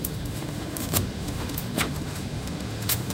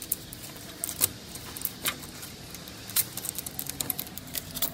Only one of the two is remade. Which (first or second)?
first